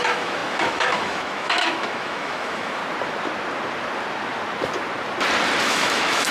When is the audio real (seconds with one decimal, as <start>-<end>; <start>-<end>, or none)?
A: 2.8-5.6